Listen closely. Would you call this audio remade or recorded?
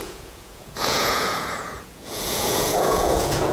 remade